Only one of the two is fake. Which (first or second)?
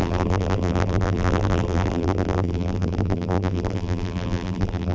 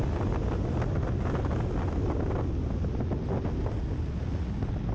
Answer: first